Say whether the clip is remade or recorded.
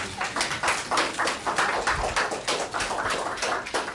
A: recorded